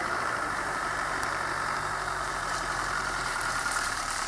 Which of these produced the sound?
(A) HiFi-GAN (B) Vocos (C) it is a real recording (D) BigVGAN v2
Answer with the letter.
D